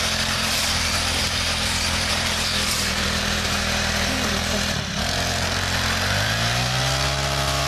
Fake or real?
fake